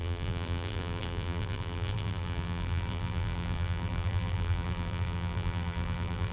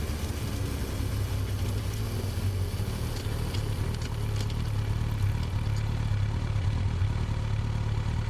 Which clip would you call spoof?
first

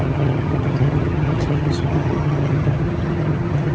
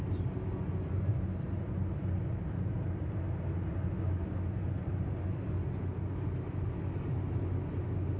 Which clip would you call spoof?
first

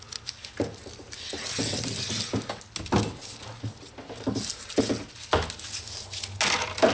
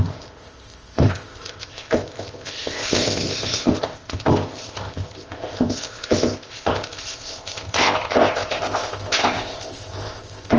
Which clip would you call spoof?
second